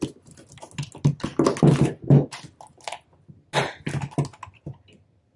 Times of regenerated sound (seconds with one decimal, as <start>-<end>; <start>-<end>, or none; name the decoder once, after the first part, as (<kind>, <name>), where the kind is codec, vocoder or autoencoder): none